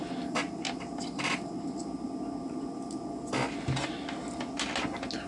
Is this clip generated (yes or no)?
no